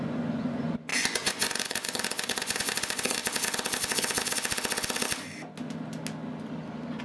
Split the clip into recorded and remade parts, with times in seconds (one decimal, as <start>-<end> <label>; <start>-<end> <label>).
0.0-3.2 remade; 3.2-7.0 recorded